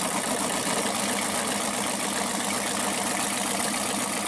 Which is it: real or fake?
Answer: real